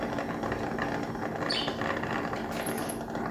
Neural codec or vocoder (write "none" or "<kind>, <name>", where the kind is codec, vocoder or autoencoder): none